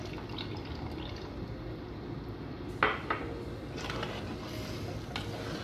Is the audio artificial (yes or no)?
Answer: no